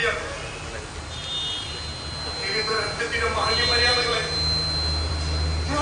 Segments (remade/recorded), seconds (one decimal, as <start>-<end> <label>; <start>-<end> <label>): 0.0-5.8 recorded